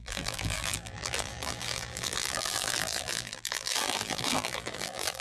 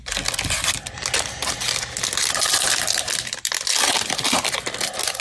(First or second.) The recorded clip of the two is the second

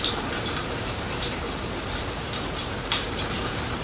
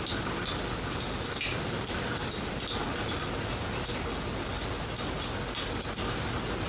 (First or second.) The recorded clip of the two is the second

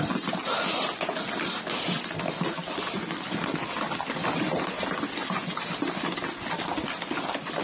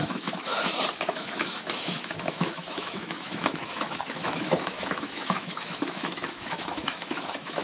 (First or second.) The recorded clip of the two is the first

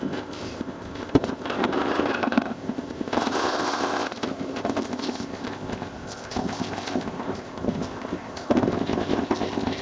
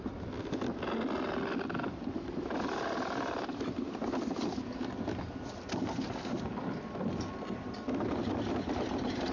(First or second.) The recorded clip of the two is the second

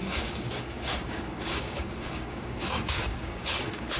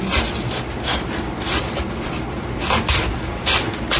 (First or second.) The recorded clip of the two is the second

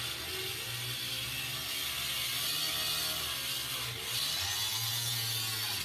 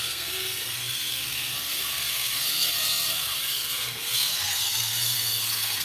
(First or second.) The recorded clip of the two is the first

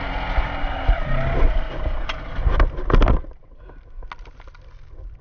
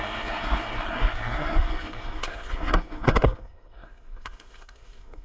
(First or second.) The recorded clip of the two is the first